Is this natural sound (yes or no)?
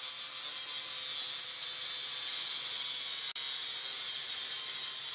yes